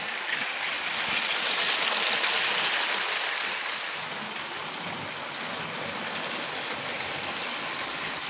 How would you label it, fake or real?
real